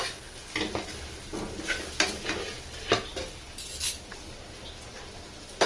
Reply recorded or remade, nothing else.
recorded